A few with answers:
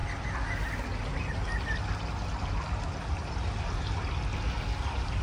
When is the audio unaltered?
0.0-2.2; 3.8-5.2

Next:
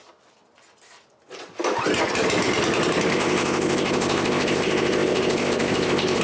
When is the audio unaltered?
0.0-3.1

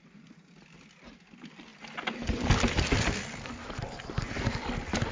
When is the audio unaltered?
0.0-5.1